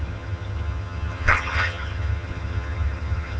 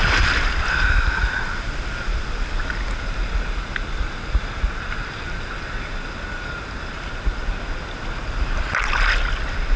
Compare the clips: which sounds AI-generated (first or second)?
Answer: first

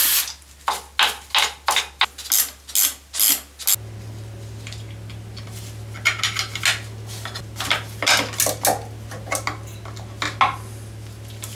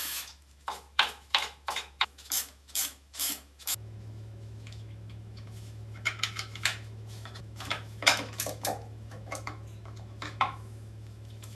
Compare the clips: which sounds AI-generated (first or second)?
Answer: second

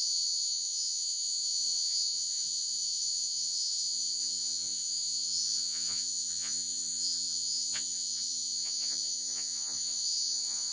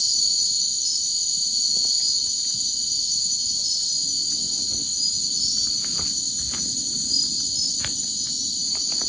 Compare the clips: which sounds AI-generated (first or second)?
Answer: first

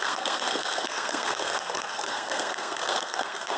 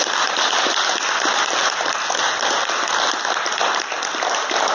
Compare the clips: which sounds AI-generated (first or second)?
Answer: first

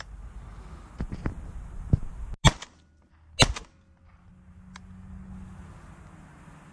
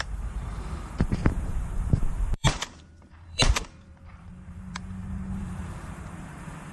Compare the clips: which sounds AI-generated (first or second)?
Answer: second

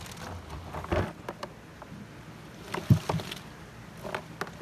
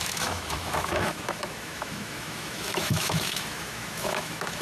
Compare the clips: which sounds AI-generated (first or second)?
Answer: second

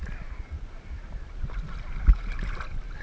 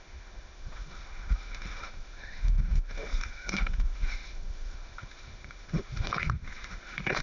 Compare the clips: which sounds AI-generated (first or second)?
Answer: second